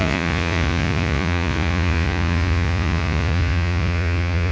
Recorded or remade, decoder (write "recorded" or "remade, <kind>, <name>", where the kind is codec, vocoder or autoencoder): remade, vocoder, Vocos